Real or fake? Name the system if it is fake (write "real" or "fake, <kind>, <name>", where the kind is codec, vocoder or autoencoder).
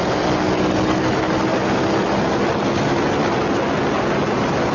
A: real